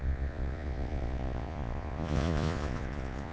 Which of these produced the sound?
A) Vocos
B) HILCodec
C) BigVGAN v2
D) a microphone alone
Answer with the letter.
A